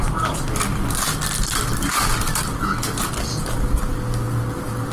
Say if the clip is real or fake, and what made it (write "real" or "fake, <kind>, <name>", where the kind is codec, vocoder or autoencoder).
real